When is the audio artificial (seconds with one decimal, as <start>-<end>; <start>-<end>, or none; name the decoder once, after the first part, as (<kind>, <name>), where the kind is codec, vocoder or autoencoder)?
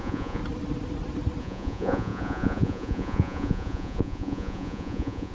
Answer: 0.0-0.4 (vocoder, Vocos); 1.4-5.3